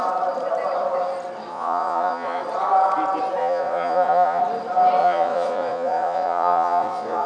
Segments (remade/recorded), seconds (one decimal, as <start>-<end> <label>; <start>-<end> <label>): 0.0-1.5 recorded; 1.5-2.4 remade; 2.4-3.4 recorded; 3.4-4.4 remade; 4.4-5.0 recorded; 5.0-7.3 remade

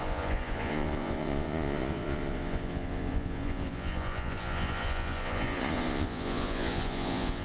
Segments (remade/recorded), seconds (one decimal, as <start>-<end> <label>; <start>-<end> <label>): 0.0-7.4 remade